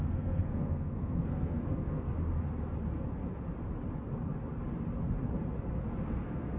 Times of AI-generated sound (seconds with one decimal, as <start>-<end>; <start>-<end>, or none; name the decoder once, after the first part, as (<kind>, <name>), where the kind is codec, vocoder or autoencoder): 0.0-2.1 (codec, SNAC); 6.1-6.6